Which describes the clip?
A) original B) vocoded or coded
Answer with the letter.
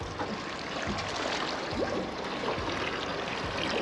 A